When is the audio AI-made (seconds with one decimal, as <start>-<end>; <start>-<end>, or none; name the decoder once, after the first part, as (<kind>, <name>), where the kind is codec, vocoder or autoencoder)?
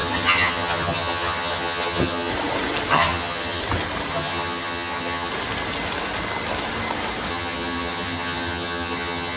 0.0-2.3 (vocoder, HiFi-GAN); 2.9-3.6; 4.1-5.3; 7.3-9.4